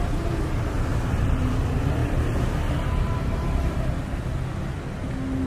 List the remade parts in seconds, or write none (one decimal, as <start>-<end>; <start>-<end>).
0.9-1.6; 2.0-4.0